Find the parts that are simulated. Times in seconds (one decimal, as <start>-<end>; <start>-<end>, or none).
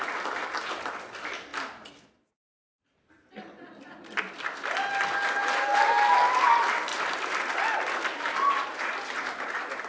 none